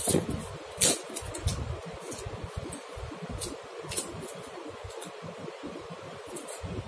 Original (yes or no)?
yes